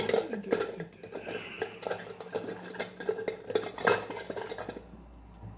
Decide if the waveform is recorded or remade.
recorded